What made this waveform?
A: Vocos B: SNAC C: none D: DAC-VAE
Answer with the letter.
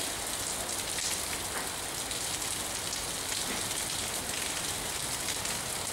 C